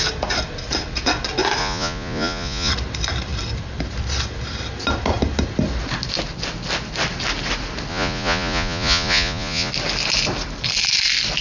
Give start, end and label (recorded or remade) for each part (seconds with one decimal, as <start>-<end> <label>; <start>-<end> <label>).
0.0-1.6 recorded; 1.6-2.7 remade; 2.7-7.9 recorded; 7.9-9.7 remade; 9.7-11.4 recorded